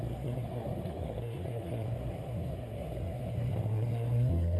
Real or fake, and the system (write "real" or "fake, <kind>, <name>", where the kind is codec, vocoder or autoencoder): fake, codec, SNAC